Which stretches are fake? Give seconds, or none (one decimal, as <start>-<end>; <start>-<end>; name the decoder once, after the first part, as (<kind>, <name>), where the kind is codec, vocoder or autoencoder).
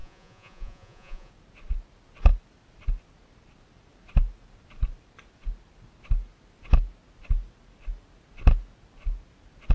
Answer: 0.0-1.3 (vocoder, Vocos)